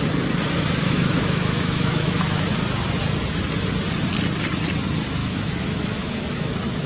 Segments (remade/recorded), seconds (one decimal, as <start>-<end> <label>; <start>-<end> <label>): 0.0-0.8 recorded; 0.8-2.5 remade; 2.5-5.2 recorded; 5.2-6.5 remade; 6.5-6.9 recorded